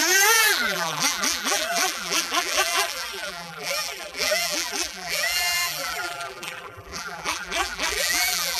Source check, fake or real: fake